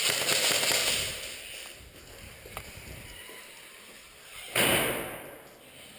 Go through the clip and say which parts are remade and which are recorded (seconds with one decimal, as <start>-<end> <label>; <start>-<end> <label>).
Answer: 0.0-6.0 recorded